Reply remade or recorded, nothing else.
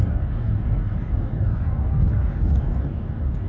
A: remade